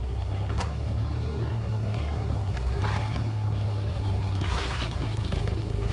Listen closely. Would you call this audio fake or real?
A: fake